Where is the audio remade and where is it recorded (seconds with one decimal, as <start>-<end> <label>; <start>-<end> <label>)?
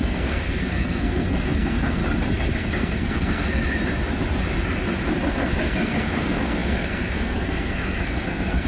0.0-2.0 remade; 2.0-2.5 recorded; 2.5-3.6 remade; 3.6-5.3 recorded; 5.3-8.7 remade